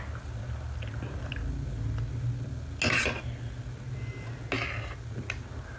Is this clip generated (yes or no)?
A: no